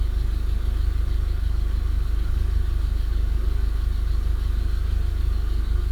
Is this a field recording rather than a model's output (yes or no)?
no